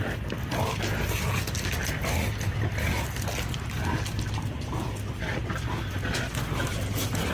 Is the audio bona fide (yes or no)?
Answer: yes